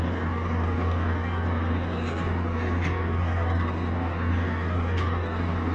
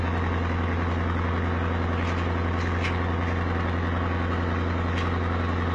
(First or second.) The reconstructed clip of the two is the first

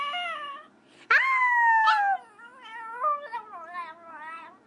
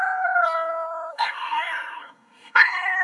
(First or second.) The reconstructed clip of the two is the second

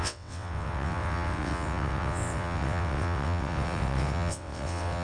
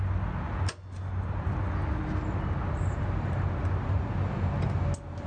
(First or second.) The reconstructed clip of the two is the first